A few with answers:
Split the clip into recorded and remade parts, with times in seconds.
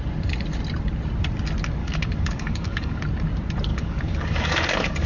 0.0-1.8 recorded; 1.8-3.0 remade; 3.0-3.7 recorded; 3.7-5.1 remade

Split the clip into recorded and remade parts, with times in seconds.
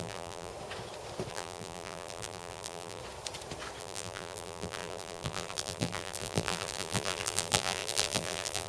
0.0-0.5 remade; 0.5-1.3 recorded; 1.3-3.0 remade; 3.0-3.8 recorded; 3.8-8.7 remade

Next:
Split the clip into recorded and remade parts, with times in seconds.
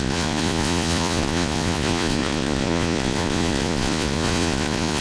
0.0-5.0 remade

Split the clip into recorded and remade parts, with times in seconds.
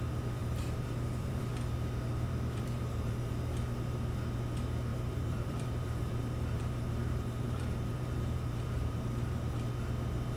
0.0-0.4 recorded; 0.4-1.4 remade; 1.4-2.1 recorded; 2.1-3.3 remade; 3.3-4.9 recorded; 4.9-9.6 remade; 9.6-10.4 recorded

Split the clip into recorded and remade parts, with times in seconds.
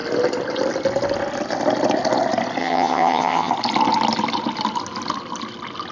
0.0-2.6 recorded; 2.6-3.5 remade; 3.5-5.9 recorded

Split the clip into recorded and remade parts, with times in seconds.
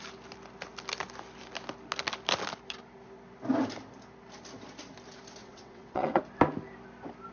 0.0-5.4 recorded; 5.4-6.2 remade; 6.2-7.3 recorded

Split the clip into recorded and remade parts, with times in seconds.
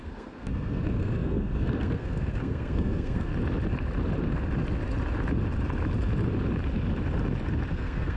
0.0-3.3 remade; 3.3-7.7 recorded; 7.7-8.2 remade